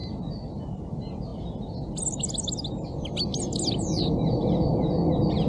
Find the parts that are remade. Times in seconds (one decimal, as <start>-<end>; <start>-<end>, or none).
none